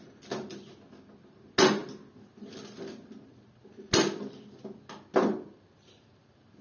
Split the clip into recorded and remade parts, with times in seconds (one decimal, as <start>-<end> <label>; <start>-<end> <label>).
0.0-6.6 recorded